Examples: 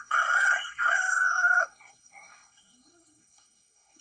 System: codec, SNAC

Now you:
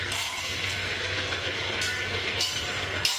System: codec, SNAC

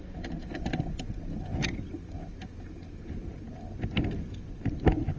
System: none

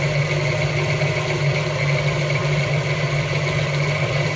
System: none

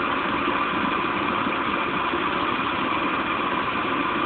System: none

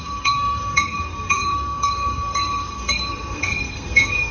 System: codec, SNAC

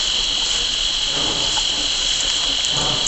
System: none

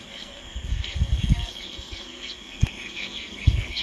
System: codec, SNAC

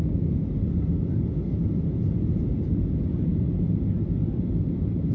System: none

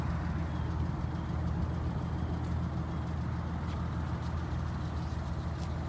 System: none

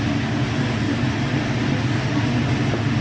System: none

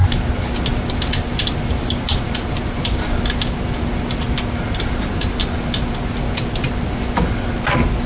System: none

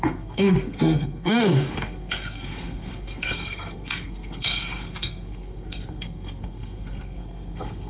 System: codec, SNAC